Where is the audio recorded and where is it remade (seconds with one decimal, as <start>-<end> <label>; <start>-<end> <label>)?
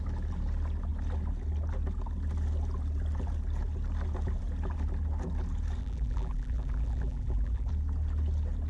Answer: 0.0-5.8 recorded; 5.8-7.7 remade; 7.7-8.7 recorded